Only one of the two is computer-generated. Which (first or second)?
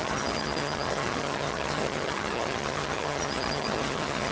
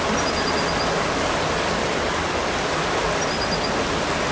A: first